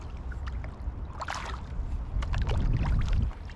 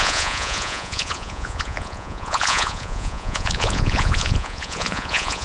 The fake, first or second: second